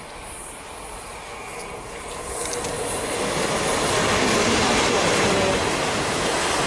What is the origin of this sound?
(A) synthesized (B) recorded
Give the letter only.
B